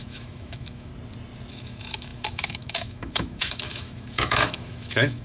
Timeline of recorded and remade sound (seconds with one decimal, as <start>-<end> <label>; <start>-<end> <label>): 0.0-0.9 remade; 0.9-1.5 recorded; 1.5-5.2 remade